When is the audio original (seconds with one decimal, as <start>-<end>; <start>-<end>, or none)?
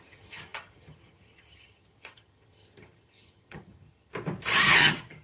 4.1-4.6